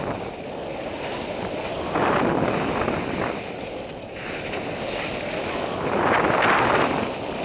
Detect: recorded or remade recorded